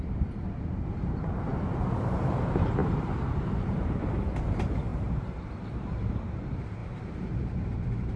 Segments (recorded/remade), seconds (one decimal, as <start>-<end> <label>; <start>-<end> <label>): 0.0-8.2 remade